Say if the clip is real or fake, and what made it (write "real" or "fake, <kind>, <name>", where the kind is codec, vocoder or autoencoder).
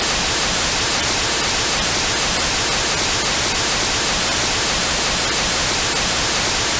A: real